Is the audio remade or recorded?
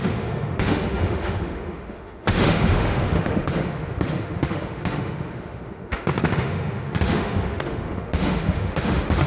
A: remade